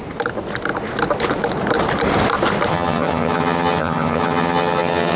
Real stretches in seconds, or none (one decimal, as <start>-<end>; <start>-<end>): 0.0-2.7

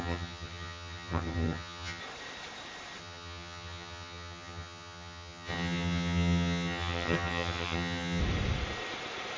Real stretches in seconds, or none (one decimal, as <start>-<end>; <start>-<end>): 2.0-3.0; 8.2-9.4

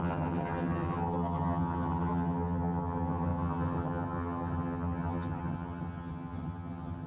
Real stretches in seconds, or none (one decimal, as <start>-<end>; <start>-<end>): none

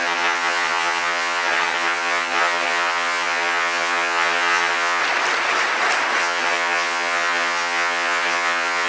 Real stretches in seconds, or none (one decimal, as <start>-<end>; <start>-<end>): 5.0-6.2

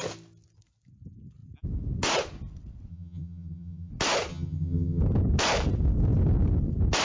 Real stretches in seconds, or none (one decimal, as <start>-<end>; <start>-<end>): 0.0-2.9; 3.9-4.3; 5.0-7.0

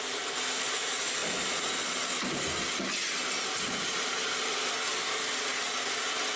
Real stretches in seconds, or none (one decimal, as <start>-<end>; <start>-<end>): 0.0-6.4

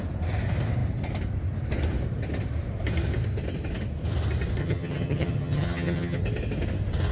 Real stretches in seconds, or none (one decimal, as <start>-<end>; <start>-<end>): 0.0-4.6; 6.2-7.1

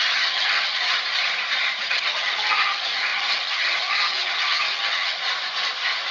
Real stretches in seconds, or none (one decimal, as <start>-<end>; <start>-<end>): 1.0-1.8; 5.2-6.1